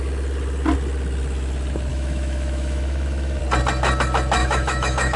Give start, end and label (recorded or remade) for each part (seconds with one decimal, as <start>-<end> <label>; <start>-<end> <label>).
0.0-1.9 recorded; 1.9-3.4 remade; 3.4-4.4 recorded; 4.4-5.2 remade

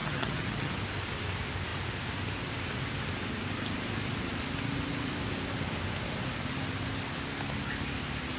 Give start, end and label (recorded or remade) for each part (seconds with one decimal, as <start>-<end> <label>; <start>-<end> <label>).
0.0-0.7 remade; 0.7-8.4 recorded

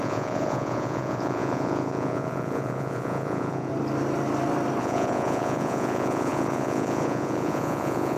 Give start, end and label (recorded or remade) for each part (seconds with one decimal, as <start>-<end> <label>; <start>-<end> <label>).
0.0-3.7 remade; 3.7-4.8 recorded; 4.8-8.2 remade

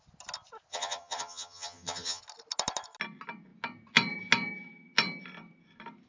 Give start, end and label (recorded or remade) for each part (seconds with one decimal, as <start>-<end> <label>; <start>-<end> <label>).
0.0-0.7 recorded; 0.7-2.2 remade; 2.2-6.1 recorded

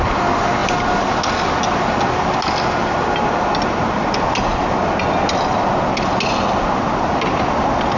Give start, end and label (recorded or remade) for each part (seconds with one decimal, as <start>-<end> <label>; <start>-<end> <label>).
0.0-8.0 recorded

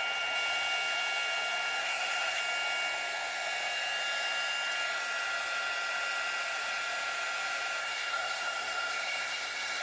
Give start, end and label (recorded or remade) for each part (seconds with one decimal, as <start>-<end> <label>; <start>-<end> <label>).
0.0-1.8 recorded; 1.8-2.4 remade; 2.4-7.8 recorded; 7.8-9.8 remade

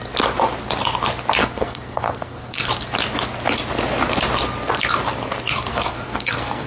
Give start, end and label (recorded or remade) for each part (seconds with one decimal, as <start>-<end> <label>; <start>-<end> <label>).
0.0-1.4 recorded; 1.4-2.7 remade; 2.7-5.7 recorded; 5.7-6.7 remade

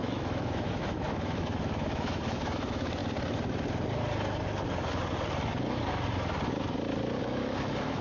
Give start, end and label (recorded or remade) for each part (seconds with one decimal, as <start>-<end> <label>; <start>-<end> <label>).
0.0-3.0 remade; 3.0-7.2 recorded; 7.2-8.0 remade